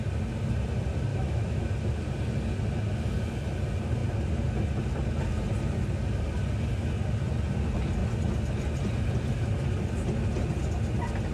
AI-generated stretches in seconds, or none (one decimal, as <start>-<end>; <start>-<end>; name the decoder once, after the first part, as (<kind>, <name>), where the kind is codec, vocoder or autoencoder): 1.1-1.7 (autoencoder, DAC-VAE)